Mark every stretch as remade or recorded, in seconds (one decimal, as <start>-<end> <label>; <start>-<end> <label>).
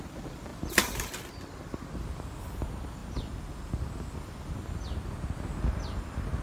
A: 0.0-6.4 recorded